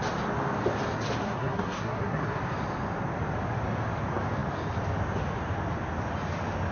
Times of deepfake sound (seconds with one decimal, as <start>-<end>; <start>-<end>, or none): 1.2-2.4

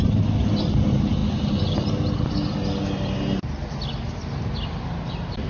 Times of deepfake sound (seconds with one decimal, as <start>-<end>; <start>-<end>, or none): none

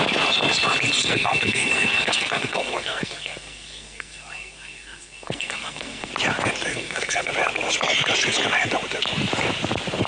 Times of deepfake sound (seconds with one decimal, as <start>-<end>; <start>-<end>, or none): 1.0-6.1; 6.7-7.3

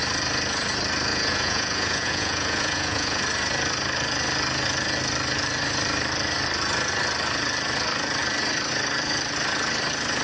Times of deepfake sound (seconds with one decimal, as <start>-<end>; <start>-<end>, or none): 1.1-3.2

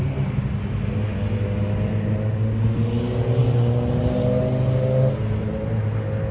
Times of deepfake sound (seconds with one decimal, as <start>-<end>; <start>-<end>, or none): none

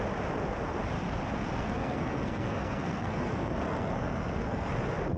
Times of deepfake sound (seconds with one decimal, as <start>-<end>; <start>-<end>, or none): 1.6-4.7

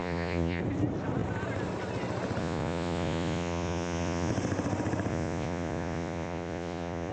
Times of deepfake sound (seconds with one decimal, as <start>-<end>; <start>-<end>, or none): 0.0-0.6; 2.4-4.3; 5.1-7.1